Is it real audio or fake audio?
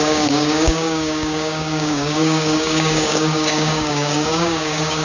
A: fake